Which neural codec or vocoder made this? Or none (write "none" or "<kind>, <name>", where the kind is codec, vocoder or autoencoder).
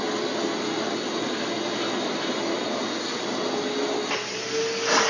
none